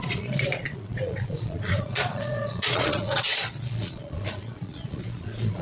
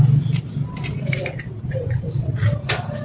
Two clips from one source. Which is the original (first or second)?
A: second